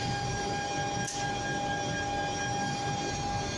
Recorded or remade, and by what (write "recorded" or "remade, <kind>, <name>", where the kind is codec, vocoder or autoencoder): recorded